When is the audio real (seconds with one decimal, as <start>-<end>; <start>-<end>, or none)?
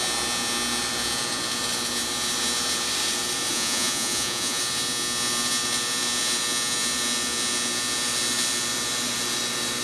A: 0.0-3.5; 4.6-9.8